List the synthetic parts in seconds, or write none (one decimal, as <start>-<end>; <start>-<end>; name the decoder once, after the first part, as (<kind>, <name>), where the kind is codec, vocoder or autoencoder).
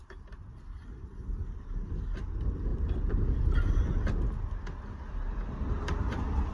none